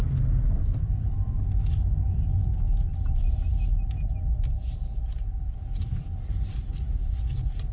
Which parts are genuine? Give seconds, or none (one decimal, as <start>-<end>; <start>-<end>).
0.0-7.7